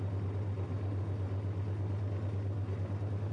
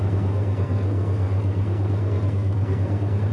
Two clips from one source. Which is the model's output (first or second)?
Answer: second